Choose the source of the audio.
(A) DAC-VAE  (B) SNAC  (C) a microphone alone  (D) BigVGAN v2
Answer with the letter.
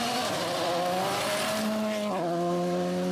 C